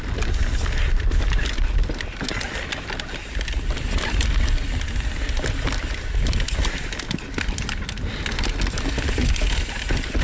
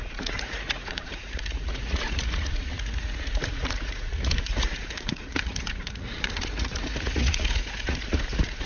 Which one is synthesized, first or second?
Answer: second